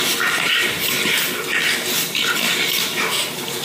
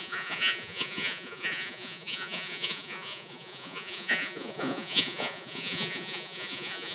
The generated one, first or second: second